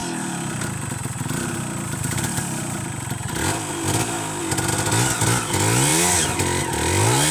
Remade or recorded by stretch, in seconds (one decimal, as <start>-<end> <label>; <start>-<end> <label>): 0.0-7.3 recorded